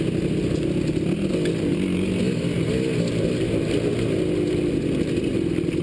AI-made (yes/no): no